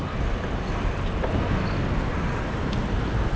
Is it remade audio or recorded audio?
recorded